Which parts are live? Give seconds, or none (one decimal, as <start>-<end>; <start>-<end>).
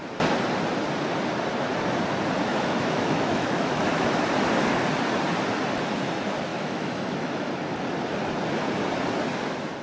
0.0-2.5; 4.1-6.5; 7.5-9.8